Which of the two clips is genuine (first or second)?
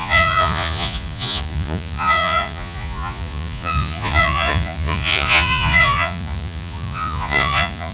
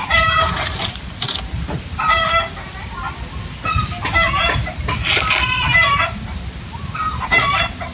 second